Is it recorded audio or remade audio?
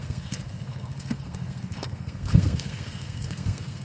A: remade